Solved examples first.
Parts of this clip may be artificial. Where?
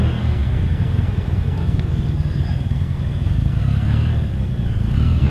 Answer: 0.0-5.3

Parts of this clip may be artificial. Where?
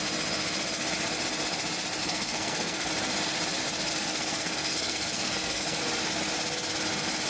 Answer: 2.0-2.9; 3.9-5.8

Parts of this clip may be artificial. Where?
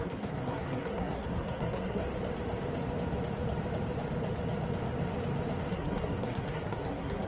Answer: 0.0-2.0; 5.7-7.3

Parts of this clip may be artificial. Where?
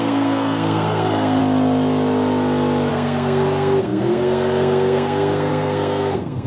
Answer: 0.0-1.4; 2.9-6.5